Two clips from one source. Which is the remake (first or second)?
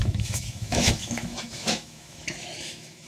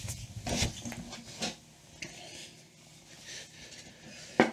first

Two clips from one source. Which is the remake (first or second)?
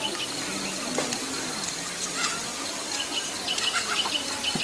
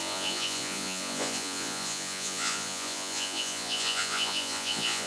second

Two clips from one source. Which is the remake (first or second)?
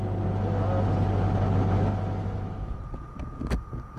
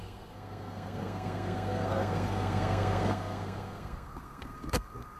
second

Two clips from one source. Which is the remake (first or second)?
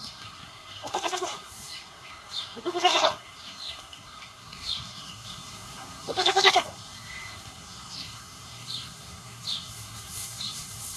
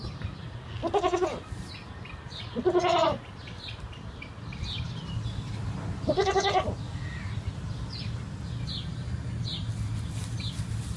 first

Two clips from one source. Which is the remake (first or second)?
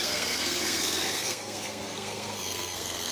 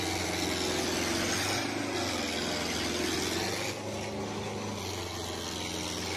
first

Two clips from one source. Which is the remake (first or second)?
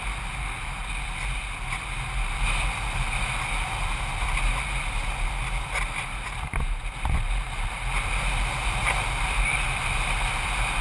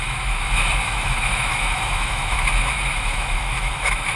second